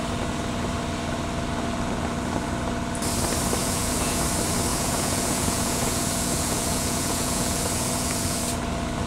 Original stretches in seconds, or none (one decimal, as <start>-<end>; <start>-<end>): 0.0-3.6; 4.2-4.7; 8.4-9.1